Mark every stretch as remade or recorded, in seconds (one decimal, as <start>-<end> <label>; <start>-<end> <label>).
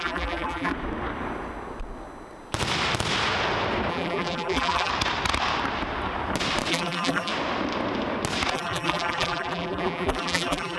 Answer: 0.0-0.7 remade; 0.7-3.9 recorded; 3.9-4.9 remade; 4.9-6.7 recorded; 6.7-7.3 remade; 7.3-8.5 recorded; 8.5-10.8 remade